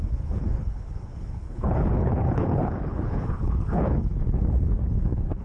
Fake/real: fake